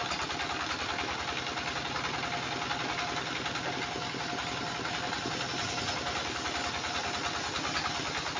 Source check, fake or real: real